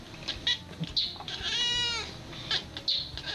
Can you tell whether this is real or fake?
real